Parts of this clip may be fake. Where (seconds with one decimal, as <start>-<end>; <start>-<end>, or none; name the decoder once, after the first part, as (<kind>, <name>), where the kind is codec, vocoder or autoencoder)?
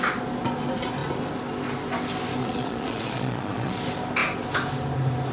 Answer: 2.4-3.8 (vocoder, Vocos)